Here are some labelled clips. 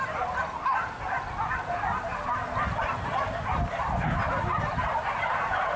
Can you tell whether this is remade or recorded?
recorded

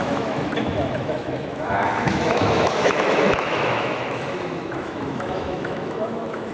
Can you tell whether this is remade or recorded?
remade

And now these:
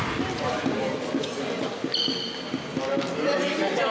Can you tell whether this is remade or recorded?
recorded